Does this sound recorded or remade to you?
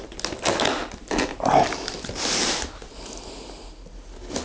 recorded